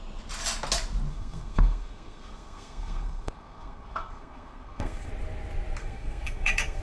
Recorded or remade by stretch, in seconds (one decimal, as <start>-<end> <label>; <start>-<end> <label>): 0.0-1.1 recorded; 1.1-5.1 remade; 5.1-5.8 recorded; 5.8-6.8 remade